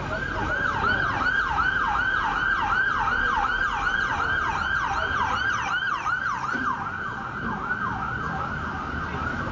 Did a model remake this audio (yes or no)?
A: yes